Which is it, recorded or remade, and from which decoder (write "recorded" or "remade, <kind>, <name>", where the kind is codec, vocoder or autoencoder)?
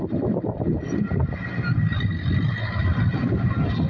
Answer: recorded